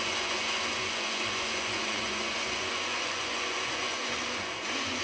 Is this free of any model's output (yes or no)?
no